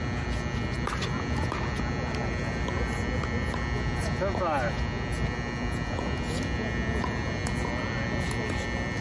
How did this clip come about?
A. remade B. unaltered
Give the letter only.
B